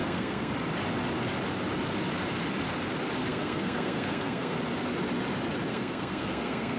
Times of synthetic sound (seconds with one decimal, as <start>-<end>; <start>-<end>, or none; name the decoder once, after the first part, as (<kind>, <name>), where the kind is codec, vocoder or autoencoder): 0.0-0.5 (codec, SNAC); 3.3-4.6; 5.7-6.8